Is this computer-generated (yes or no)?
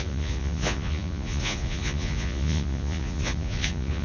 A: yes